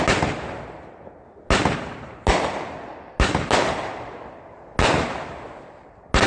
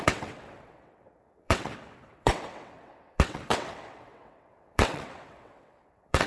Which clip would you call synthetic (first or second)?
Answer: second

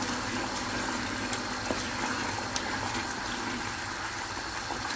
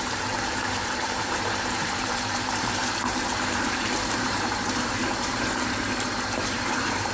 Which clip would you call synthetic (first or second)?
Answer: second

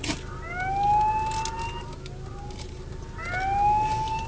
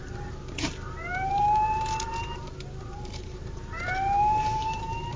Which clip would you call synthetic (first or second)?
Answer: second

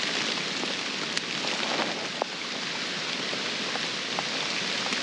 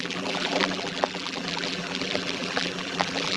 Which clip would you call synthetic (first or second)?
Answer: second